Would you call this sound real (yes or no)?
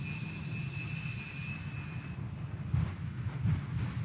yes